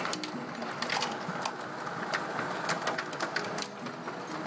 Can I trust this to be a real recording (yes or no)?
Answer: yes